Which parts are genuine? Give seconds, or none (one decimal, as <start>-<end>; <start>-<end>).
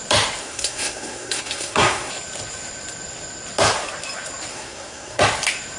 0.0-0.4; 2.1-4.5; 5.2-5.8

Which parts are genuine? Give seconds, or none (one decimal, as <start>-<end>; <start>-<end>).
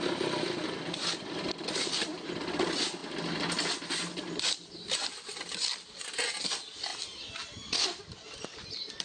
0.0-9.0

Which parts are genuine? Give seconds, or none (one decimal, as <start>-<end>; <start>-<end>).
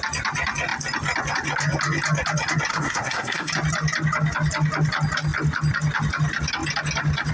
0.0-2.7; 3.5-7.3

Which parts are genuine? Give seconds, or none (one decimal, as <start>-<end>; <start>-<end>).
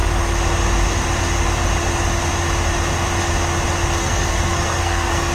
0.0-4.0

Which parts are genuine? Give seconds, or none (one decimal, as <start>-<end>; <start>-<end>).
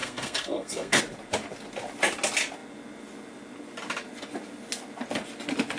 1.0-5.8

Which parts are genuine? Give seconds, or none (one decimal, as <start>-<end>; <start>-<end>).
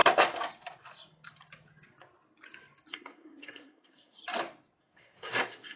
0.0-2.9; 4.2-4.8